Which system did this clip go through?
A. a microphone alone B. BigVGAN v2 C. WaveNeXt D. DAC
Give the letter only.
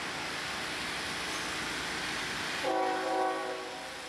A